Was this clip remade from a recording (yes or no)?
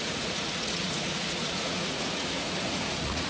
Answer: yes